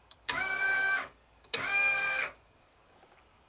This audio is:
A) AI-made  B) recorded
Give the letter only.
A